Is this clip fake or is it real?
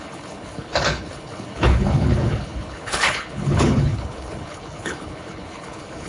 fake